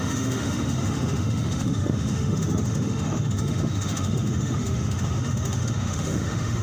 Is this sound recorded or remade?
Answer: remade